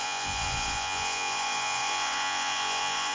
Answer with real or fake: fake